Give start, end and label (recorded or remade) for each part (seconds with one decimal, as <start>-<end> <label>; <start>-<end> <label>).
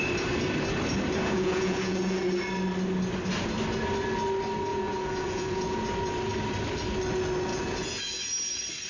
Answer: 0.0-1.2 recorded; 1.2-2.2 remade; 2.2-4.7 recorded; 4.7-5.9 remade; 5.9-7.5 recorded; 7.5-8.2 remade; 8.2-8.9 recorded